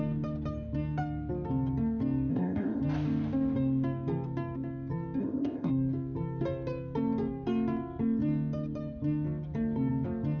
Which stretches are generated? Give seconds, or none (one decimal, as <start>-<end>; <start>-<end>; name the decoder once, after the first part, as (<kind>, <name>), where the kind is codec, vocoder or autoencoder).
2.3-2.8 (codec, ZipCodec); 5.2-5.7